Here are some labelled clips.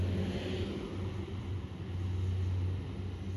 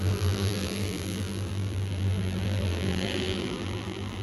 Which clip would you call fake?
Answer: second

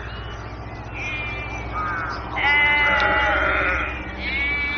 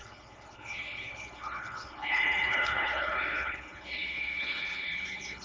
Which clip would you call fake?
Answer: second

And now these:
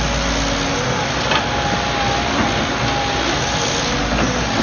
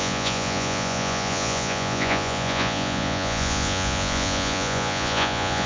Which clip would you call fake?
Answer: second